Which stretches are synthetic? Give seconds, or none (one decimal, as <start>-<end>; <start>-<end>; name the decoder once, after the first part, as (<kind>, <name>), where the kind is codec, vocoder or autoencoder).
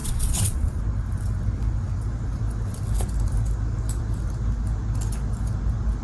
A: 0.0-0.8 (vocoder, Vocos)